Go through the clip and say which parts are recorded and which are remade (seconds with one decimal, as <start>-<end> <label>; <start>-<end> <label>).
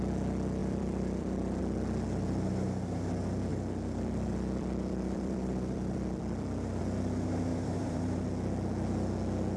0.0-0.6 recorded; 0.6-1.6 remade; 1.6-3.5 recorded; 3.5-6.8 remade; 6.8-7.5 recorded; 7.5-8.2 remade; 8.2-9.6 recorded